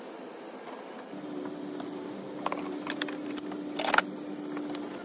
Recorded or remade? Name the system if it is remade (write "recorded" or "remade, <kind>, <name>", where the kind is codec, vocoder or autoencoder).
recorded